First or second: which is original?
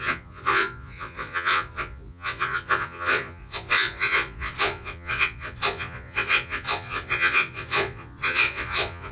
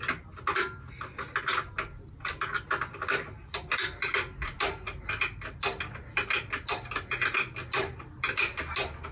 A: second